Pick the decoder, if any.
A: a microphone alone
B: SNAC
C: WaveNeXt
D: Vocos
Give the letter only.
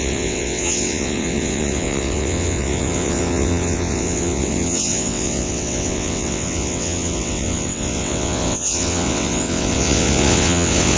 C